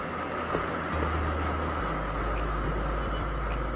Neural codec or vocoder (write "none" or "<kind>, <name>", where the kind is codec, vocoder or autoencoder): none